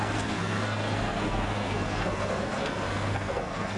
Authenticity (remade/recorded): remade